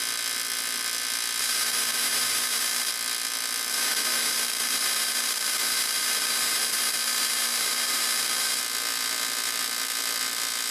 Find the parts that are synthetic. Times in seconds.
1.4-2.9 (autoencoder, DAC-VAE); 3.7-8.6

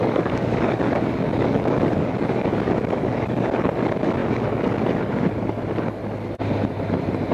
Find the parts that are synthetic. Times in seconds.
0.0-6.0 (codec, DAC)

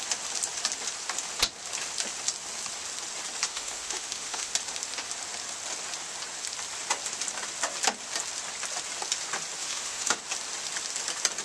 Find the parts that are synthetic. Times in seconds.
3.5-4.5 (autoencoder, DAC-VAE); 9.6-10.2

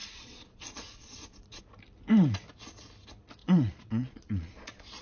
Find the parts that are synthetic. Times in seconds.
0.0-1.6 (vocoder, Vocos); 3.4-5.0